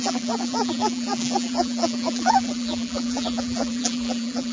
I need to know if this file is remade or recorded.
remade